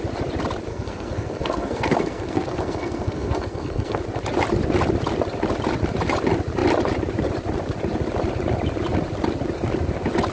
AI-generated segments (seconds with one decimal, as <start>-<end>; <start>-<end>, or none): 0.7-4.0

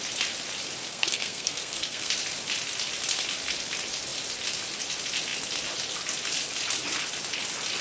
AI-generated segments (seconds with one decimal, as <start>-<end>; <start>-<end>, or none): 0.8-2.1

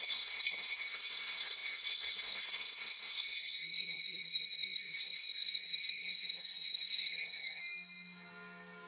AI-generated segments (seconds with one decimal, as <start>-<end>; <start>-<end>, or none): 0.0-7.6

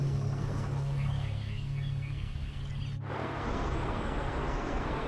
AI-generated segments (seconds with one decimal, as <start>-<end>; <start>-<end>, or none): 0.0-2.6; 3.1-5.1

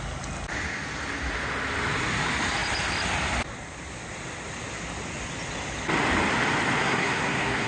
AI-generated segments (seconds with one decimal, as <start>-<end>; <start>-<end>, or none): 6.8-7.7